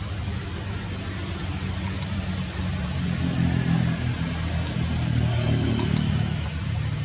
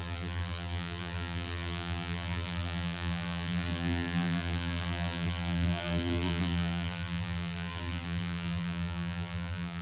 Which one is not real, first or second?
second